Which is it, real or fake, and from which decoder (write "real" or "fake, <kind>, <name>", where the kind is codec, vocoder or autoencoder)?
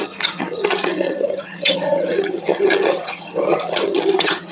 fake, vocoder, HiFi-GAN